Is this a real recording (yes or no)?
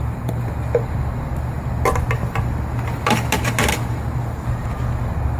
yes